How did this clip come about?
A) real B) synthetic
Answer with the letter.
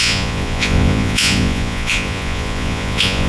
B